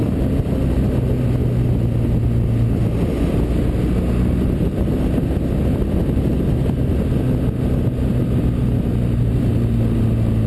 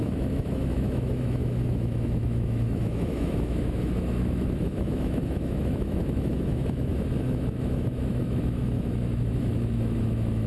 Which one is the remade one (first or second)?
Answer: second